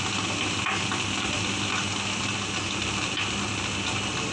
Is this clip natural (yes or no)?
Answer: yes